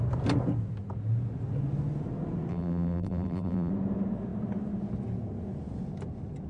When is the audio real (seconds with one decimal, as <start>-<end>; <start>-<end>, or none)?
0.0-2.5; 3.7-6.5